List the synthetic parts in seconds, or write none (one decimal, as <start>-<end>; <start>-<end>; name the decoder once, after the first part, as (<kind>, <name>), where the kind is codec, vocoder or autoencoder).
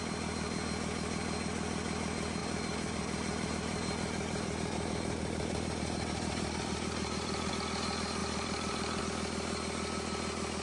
2.4-7.5 (vocoder, BigVGAN v2); 8.2-9.0